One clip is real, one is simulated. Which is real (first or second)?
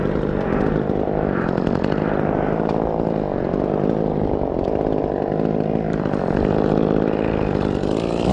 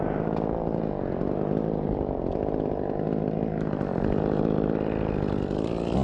second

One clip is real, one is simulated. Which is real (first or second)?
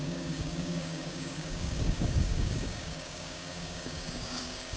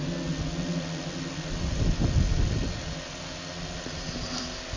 second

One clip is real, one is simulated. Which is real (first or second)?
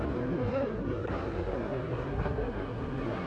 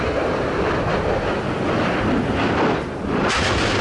second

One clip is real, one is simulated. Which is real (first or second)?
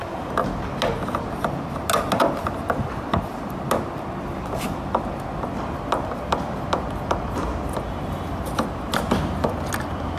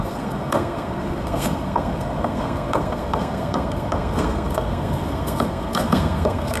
first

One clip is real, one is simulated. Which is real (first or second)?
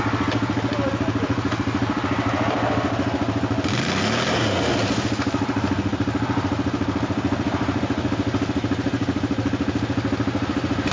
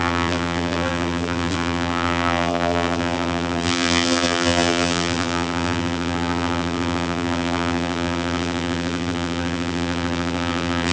first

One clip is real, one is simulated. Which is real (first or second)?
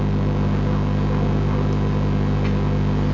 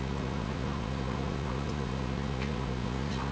first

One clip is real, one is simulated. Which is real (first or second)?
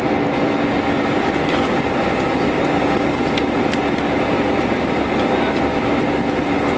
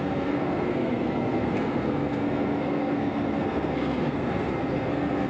first